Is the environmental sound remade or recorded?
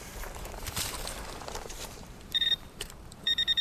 remade